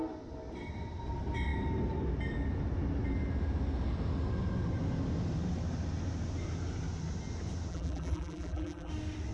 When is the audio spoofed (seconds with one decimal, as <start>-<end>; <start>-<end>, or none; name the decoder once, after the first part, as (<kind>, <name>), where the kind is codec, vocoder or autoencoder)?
7.7-8.9 (vocoder, BigVGAN v2)